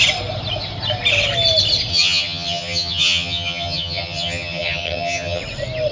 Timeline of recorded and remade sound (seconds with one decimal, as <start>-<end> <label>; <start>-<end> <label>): 0.0-1.9 recorded; 1.9-5.4 remade; 5.4-5.9 recorded